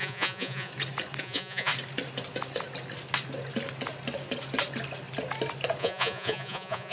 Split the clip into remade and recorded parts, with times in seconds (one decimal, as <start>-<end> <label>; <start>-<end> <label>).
0.0-0.7 remade; 0.7-1.2 recorded; 1.2-1.7 remade; 1.7-5.8 recorded; 5.8-6.9 remade